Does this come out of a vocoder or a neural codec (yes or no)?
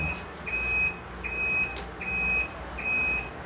no